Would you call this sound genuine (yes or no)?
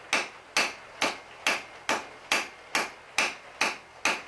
yes